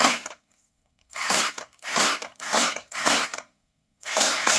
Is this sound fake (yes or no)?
yes